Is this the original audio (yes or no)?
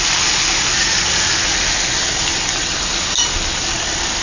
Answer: yes